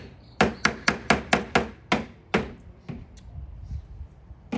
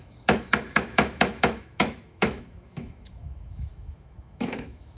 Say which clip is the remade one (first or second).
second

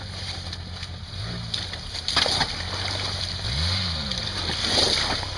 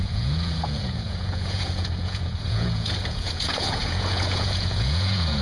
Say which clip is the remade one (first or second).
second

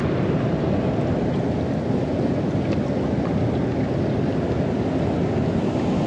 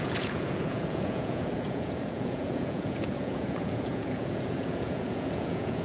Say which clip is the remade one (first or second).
second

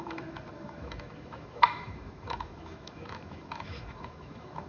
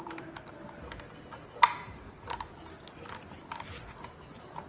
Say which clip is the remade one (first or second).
first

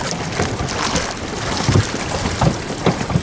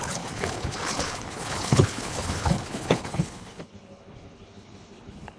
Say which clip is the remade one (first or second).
second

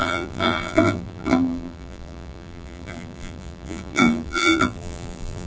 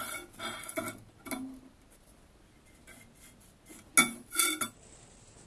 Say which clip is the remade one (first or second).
first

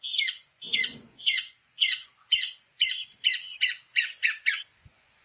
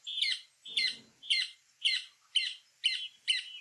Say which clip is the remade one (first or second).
first